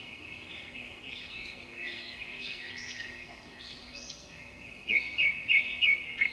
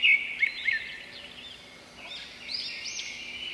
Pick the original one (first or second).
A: second